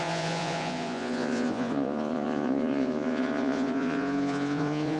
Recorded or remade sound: remade